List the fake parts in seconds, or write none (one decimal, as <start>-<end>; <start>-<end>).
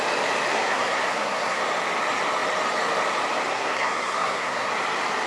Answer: 0.5-1.6; 3.5-4.7